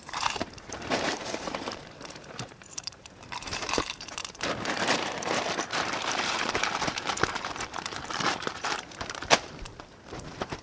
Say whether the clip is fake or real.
fake